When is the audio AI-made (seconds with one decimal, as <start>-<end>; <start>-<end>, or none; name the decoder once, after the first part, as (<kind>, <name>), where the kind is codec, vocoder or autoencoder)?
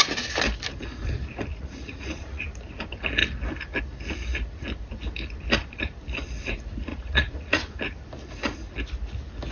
1.5-2.4 (vocoder, Vocos); 6.9-7.7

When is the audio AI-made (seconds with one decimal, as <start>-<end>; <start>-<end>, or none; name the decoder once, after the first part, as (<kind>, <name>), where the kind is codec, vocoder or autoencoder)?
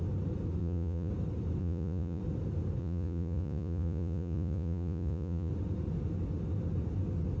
0.6-1.1 (vocoder, Vocos); 1.6-2.2; 2.8-5.5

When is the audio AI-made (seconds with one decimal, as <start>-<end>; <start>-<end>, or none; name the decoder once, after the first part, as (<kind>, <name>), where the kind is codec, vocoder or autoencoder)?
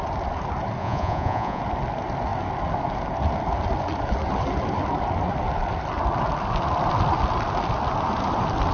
0.8-1.6 (vocoder, Vocos)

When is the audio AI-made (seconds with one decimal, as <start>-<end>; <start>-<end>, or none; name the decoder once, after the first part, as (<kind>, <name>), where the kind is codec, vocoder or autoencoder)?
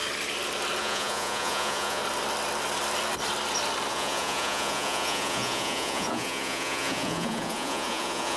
0.8-2.0 (vocoder, Vocos); 3.9-8.4